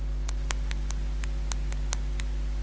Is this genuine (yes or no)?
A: yes